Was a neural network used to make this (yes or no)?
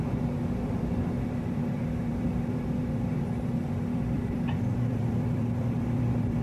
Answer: yes